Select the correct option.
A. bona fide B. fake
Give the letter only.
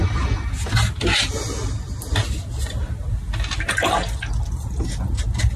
A